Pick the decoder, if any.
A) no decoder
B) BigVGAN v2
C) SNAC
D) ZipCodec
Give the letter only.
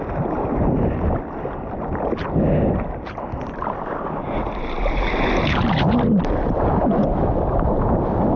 A